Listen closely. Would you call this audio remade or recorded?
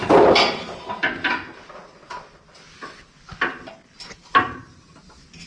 recorded